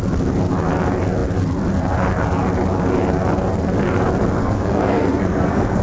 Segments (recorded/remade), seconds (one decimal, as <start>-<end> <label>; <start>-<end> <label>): 0.0-4.4 recorded; 4.4-5.8 remade